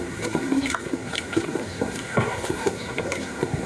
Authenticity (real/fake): fake